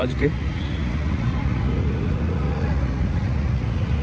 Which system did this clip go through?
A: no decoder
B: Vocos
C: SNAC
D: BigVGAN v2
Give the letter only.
B